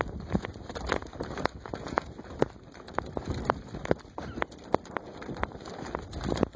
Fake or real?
real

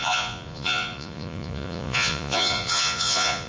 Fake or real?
fake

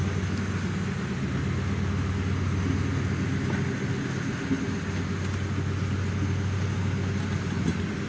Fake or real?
real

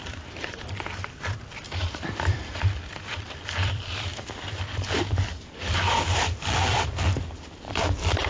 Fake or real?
fake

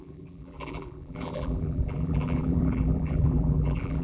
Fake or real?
fake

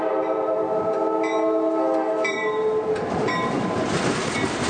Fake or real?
real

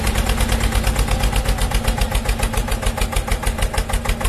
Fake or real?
real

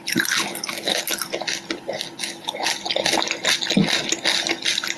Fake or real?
real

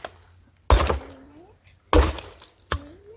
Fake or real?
real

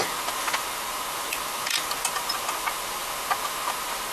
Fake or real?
real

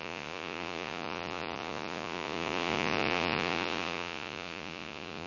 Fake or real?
fake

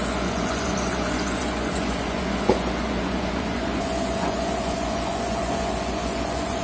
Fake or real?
fake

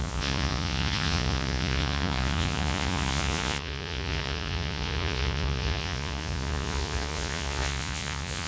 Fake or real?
fake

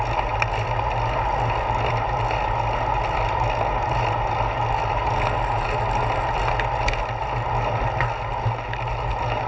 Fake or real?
real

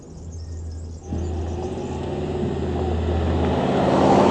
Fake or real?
real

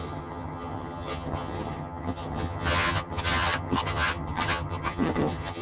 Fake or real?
fake